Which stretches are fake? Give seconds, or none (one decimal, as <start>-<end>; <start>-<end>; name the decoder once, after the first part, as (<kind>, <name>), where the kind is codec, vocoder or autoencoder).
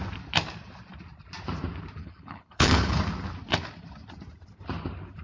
2.0-3.0 (codec, HILCodec)